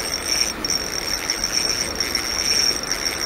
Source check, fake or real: real